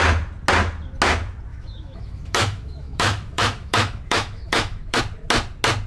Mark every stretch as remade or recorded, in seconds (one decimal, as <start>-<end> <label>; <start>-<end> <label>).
0.0-1.5 recorded; 1.5-5.0 remade; 5.0-5.9 recorded